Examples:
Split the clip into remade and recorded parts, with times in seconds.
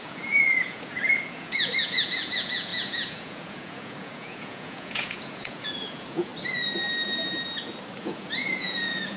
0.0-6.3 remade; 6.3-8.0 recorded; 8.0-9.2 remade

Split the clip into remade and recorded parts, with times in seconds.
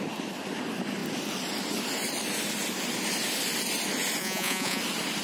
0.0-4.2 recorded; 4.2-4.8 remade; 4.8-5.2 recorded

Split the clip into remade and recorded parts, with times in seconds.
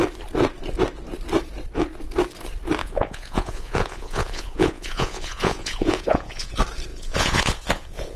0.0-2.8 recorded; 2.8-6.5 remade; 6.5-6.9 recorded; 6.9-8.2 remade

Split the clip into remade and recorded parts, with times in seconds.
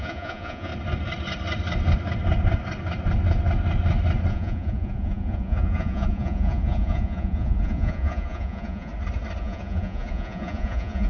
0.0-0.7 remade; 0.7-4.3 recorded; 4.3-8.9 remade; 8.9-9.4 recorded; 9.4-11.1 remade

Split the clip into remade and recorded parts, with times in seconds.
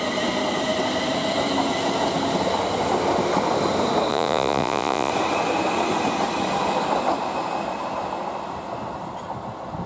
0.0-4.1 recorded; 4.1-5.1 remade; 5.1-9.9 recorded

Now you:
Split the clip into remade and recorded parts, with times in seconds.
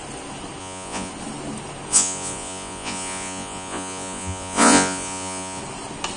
0.0-0.6 recorded; 0.6-1.1 remade; 1.1-1.9 recorded; 1.9-5.6 remade; 5.6-6.2 recorded